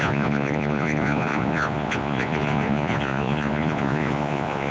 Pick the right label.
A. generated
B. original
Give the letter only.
A